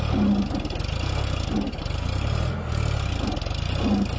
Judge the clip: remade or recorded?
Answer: recorded